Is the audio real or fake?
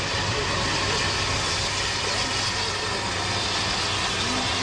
real